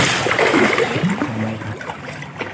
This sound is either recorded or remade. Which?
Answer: remade